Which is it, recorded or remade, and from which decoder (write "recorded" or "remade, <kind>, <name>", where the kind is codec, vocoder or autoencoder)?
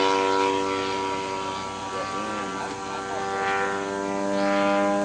recorded